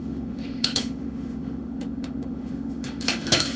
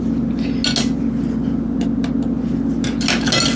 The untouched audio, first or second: second